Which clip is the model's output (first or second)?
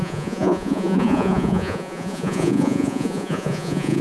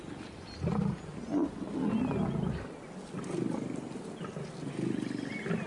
first